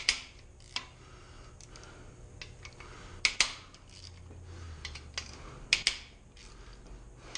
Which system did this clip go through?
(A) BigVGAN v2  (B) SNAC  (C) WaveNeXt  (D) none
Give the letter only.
D